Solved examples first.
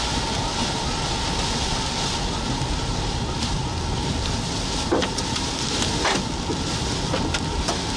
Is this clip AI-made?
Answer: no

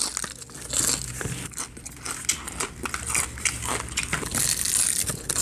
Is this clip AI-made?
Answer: no